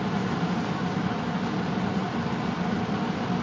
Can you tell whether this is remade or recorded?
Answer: recorded